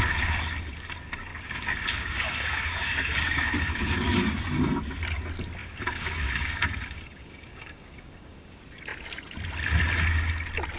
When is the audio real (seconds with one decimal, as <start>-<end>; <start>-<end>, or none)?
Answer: 0.0-1.3; 4.4-5.6; 8.5-10.8